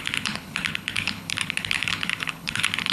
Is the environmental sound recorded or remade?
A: remade